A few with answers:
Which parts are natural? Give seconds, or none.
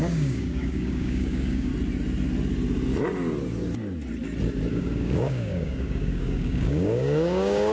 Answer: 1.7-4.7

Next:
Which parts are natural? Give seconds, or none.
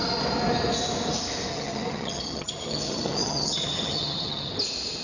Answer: 0.0-1.5; 4.5-5.0